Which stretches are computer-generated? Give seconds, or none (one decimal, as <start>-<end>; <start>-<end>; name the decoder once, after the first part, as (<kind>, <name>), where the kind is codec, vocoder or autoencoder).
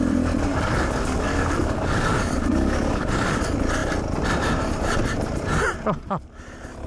0.5-3.4 (codec, DAC)